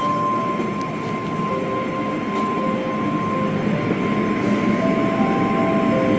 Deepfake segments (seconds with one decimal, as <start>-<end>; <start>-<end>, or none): none